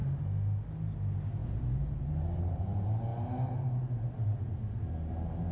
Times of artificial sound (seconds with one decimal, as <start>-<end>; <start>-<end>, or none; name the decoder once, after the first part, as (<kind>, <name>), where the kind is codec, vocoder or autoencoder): 0.0-0.7 (autoencoder, DAC-VAE)